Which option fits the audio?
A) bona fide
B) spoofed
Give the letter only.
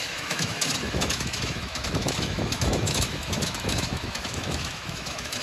B